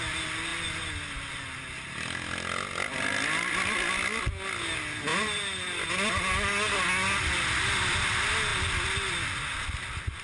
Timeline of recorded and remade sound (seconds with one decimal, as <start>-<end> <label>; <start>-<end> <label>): 0.0-10.2 recorded